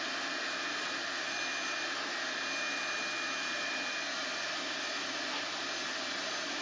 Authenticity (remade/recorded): recorded